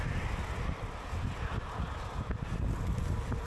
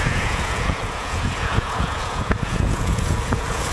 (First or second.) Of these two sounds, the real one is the first